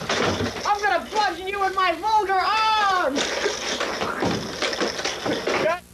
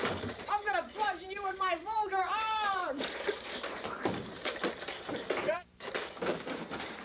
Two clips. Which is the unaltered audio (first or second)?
first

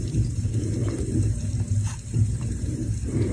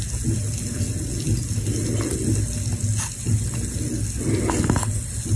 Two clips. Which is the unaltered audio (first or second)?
second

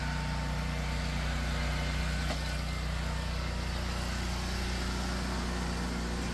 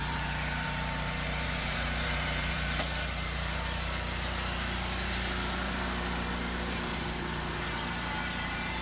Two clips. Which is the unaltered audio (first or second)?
first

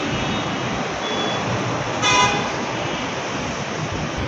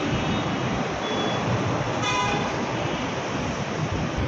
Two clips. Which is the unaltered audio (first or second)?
first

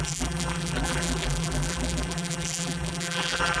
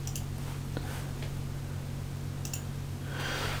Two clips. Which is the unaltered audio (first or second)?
second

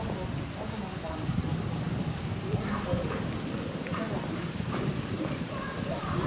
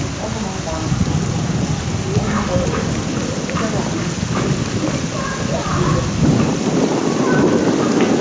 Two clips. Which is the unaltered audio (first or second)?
second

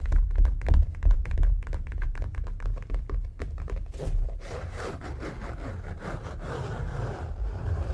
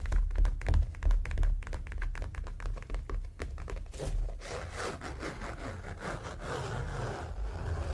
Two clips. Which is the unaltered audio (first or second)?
second